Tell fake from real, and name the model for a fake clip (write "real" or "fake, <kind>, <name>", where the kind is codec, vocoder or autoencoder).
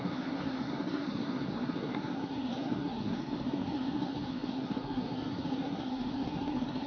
fake, codec, SNAC